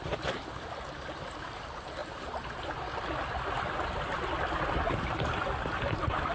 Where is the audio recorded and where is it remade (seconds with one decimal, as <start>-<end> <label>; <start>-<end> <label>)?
0.0-6.3 recorded